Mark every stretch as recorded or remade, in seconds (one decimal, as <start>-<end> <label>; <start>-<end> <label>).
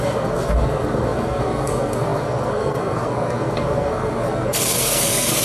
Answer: 0.0-5.4 remade